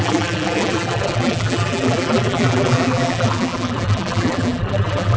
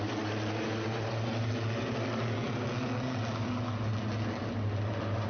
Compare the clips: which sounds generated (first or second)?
first